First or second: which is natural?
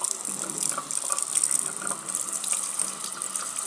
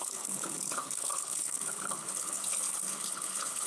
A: first